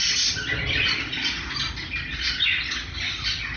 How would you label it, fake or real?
real